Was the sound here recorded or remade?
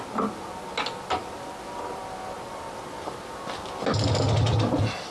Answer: recorded